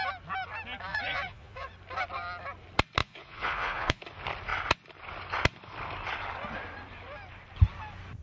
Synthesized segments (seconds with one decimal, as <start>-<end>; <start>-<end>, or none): 0.9-1.7; 3.0-4.0